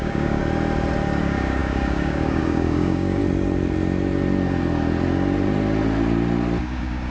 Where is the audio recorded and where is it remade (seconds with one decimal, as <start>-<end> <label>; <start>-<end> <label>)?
0.0-0.4 remade; 0.4-1.2 recorded; 1.2-3.2 remade; 3.2-6.6 recorded; 6.6-7.1 remade